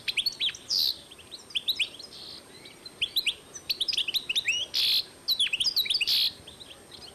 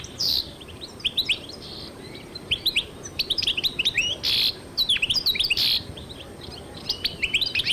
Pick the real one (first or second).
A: first